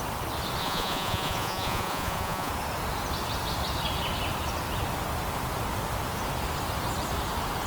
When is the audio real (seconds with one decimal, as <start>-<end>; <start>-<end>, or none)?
0.0-0.6; 2.5-7.7

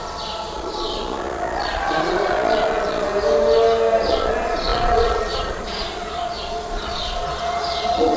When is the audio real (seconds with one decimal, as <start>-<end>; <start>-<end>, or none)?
3.1-4.1

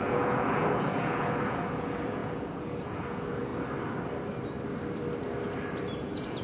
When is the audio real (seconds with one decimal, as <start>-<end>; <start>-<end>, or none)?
3.5-6.0

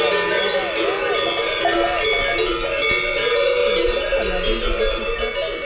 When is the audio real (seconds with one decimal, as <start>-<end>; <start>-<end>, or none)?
0.0-5.7